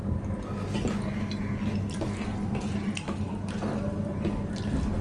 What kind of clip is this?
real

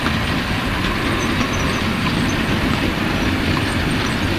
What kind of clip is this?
real